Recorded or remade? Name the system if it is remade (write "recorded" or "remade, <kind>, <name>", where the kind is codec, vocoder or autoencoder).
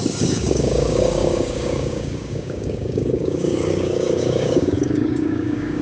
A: remade, codec, DAC